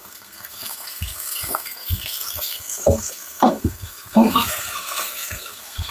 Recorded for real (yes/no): no